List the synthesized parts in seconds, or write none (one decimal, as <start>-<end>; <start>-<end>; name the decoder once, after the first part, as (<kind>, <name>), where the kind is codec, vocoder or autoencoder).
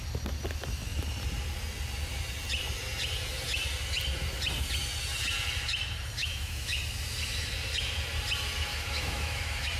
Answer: 6.2-6.8 (autoencoder, DAC-VAE); 8.7-9.8